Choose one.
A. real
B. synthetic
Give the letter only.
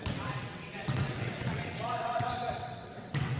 B